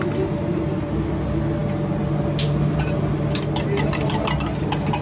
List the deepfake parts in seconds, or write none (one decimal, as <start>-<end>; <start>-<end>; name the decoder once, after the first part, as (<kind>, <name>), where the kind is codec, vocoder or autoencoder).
none